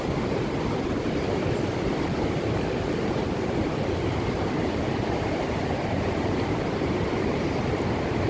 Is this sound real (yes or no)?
no